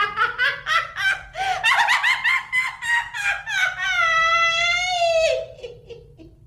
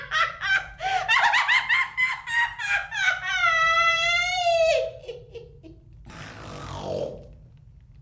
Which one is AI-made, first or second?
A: second